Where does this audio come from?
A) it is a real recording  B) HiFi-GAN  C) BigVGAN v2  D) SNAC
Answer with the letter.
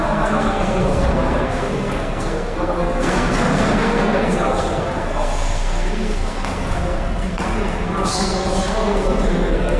D